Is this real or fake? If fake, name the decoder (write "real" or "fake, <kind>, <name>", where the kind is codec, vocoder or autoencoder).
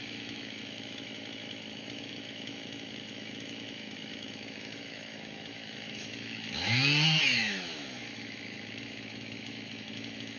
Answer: fake, autoencoder, DAC-VAE